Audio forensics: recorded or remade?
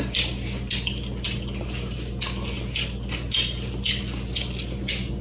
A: recorded